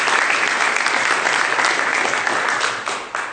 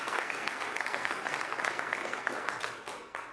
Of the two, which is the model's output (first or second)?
second